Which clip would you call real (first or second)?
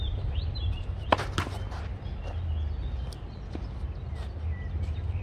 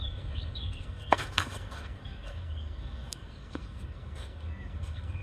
first